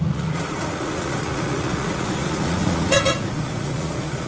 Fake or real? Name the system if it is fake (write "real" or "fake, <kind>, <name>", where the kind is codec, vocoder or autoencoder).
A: fake, vocoder, Vocos